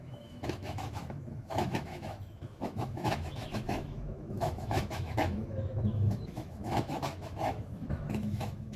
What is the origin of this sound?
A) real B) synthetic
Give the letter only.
B